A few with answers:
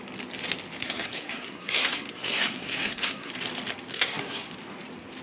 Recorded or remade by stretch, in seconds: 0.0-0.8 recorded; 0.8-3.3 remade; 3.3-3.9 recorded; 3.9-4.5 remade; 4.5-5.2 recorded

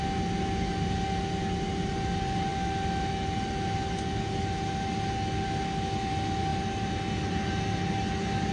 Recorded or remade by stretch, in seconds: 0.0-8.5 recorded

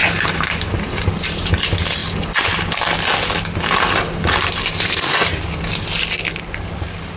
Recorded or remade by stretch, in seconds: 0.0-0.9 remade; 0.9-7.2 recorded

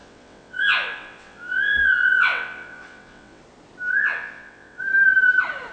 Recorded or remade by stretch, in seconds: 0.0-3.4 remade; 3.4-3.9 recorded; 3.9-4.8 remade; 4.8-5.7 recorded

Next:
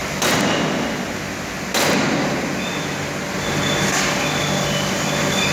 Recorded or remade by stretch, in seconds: 0.0-5.5 recorded

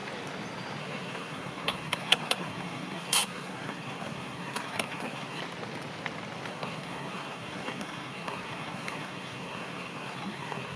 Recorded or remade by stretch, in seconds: 0.0-0.8 recorded; 0.8-5.4 remade; 5.4-6.5 recorded; 6.5-10.8 remade

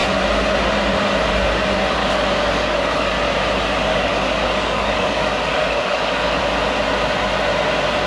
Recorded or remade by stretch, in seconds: 0.0-2.0 recorded; 2.0-3.1 remade; 3.1-3.9 recorded; 3.9-6.4 remade; 6.4-8.1 recorded

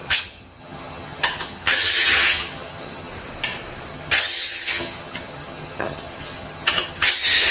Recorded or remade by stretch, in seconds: 0.0-3.1 remade; 3.1-3.9 recorded; 3.9-7.5 remade